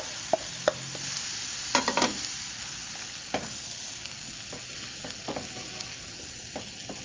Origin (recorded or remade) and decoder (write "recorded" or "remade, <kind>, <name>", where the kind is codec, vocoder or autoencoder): recorded